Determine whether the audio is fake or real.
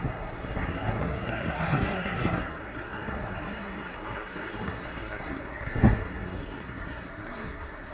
fake